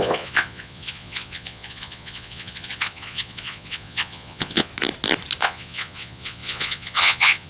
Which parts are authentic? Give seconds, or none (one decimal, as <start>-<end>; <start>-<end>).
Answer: 4.7-5.4